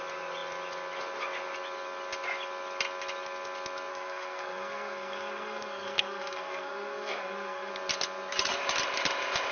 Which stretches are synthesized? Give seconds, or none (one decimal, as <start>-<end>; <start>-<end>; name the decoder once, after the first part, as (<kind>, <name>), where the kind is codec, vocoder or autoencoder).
3.9-7.7 (codec, SNAC)